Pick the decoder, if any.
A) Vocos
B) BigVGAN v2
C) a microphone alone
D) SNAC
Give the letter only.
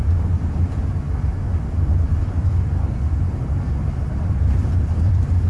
B